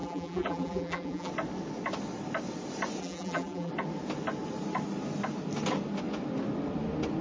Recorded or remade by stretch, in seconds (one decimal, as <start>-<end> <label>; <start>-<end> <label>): 0.0-1.3 remade; 1.3-3.0 recorded; 3.0-3.7 remade; 3.7-7.2 recorded